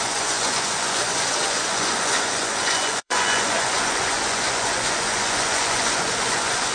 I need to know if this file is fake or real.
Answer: fake